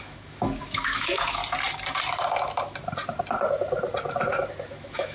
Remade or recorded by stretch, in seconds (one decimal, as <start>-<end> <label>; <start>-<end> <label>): 0.0-1.4 remade; 1.4-4.5 recorded; 4.5-5.1 remade